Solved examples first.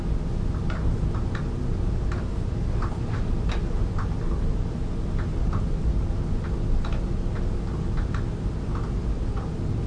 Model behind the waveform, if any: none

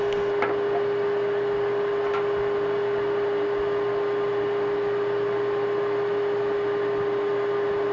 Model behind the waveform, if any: none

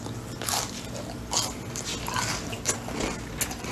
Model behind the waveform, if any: none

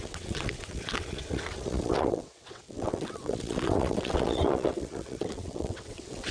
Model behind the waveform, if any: vocoder, WaveNeXt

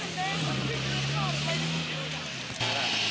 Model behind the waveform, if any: none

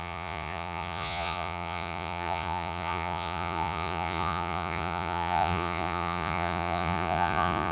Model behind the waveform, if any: vocoder, Vocos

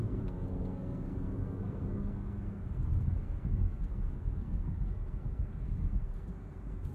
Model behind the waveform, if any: codec, SNAC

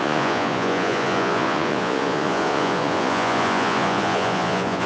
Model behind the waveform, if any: vocoder, Vocos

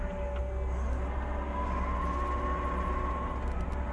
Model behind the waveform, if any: none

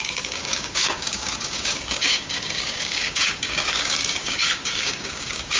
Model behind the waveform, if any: codec, DAC